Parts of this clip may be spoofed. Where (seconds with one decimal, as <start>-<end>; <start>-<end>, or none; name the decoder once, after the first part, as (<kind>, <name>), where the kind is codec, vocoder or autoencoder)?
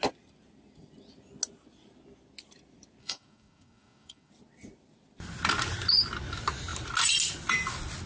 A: 3.0-4.3 (codec, DAC)